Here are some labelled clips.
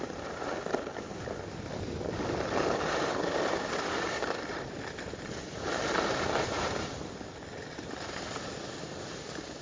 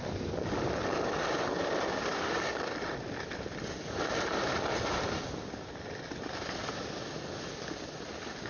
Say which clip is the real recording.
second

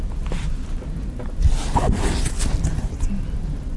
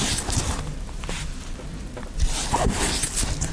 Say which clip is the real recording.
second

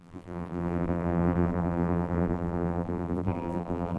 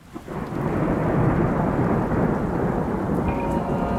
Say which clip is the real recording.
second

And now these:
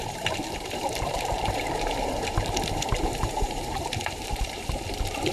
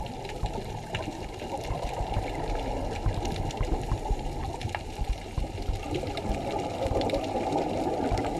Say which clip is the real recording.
second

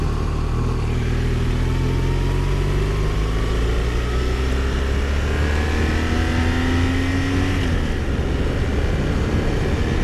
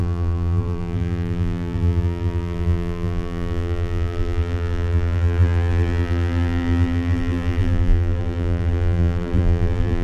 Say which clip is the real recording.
first